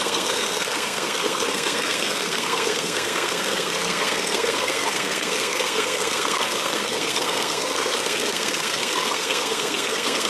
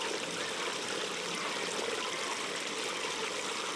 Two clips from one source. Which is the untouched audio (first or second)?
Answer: second